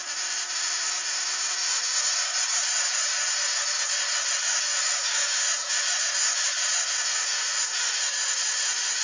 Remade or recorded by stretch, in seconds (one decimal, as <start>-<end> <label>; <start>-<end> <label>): 0.0-9.0 recorded